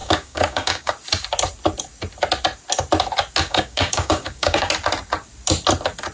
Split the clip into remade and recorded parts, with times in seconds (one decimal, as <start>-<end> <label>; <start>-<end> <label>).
0.0-0.9 remade; 0.9-3.4 recorded; 3.4-4.7 remade; 4.7-6.1 recorded